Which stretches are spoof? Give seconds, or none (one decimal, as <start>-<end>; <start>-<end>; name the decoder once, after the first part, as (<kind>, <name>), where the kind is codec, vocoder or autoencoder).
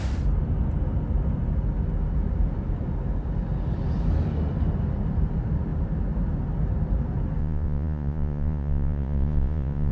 7.4-9.9 (vocoder, Vocos)